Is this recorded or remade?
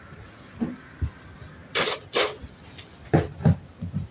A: recorded